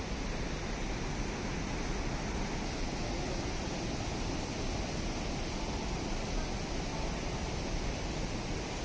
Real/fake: real